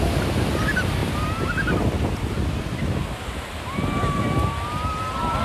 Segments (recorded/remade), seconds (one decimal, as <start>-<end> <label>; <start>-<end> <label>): 0.0-5.4 recorded

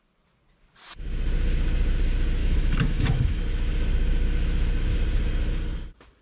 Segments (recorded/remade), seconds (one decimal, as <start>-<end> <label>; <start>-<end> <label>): 0.0-2.4 recorded; 2.4-3.4 remade; 3.4-6.2 recorded

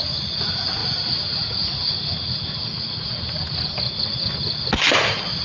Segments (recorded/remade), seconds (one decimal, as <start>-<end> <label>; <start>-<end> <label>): 0.0-5.4 recorded

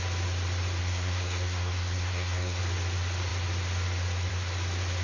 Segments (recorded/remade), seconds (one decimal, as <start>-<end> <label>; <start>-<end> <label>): 0.0-0.8 recorded; 0.8-2.6 remade; 2.6-5.0 recorded

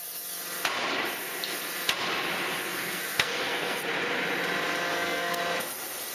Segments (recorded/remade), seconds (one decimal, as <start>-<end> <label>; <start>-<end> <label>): 0.0-2.7 recorded; 2.7-3.8 remade; 3.8-4.9 recorded; 4.9-5.4 remade; 5.4-6.1 recorded

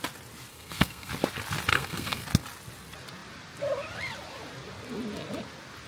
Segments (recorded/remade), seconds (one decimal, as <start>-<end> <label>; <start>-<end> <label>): 0.0-0.5 recorded; 0.5-1.1 remade; 1.1-1.7 recorded; 1.7-2.2 remade; 2.2-5.9 recorded

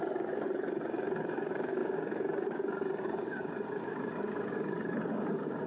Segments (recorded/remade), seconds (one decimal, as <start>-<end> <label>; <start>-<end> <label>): 0.0-5.7 remade

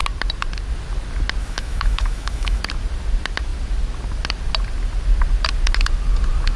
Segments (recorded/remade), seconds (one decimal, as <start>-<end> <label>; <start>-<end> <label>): 0.0-1.4 recorded; 1.4-2.6 remade; 2.6-6.6 recorded